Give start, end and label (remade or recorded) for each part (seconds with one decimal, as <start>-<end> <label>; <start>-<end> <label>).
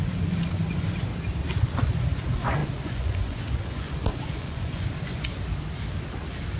0.0-1.1 remade; 1.1-2.0 recorded; 2.0-5.3 remade; 5.3-6.6 recorded